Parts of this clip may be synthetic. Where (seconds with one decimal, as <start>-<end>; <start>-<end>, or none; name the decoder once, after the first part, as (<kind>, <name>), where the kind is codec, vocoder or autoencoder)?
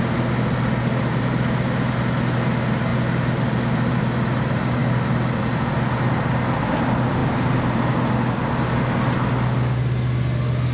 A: none